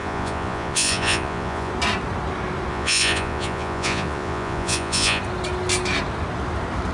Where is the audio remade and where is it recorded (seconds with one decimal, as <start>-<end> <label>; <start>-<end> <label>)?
0.0-1.7 remade; 1.7-2.7 recorded; 2.7-5.2 remade; 5.2-6.9 recorded